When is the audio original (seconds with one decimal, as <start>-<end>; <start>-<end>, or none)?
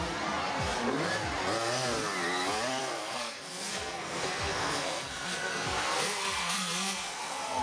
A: 0.0-2.8